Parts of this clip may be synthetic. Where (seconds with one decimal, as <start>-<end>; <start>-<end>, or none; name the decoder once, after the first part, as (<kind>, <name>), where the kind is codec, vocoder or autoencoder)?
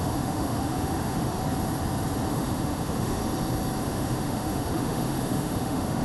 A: 0.0-1.4 (autoencoder, DAC-VAE); 2.3-3.2; 3.8-6.0